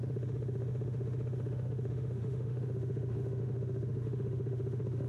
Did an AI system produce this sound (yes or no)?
yes